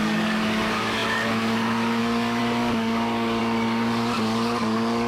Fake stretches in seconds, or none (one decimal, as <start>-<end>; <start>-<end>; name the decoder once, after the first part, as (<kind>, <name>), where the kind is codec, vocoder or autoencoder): 0.0-5.1 (codec, DAC)